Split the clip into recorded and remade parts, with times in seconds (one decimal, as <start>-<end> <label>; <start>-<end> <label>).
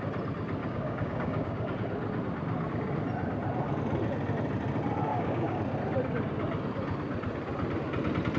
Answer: 0.0-0.6 recorded; 0.6-1.7 remade; 1.7-5.1 recorded; 5.1-5.6 remade; 5.6-8.4 recorded